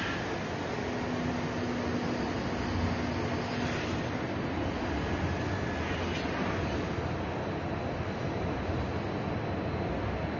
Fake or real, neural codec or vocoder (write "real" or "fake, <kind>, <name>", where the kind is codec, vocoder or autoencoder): real